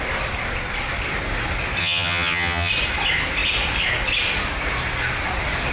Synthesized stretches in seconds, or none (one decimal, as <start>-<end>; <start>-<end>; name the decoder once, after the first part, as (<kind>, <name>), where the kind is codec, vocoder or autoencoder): 1.8-2.7 (vocoder, HiFi-GAN)